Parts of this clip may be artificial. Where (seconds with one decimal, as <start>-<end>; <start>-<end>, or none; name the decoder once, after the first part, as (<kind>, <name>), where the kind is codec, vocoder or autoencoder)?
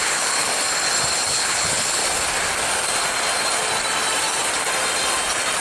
0.0-0.5 (codec, HILCodec); 1.3-2.0